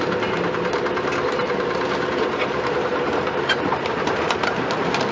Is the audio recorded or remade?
remade